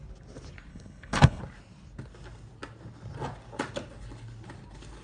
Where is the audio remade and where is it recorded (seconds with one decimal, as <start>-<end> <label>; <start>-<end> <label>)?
0.0-0.7 recorded; 0.7-1.4 remade; 1.4-5.0 recorded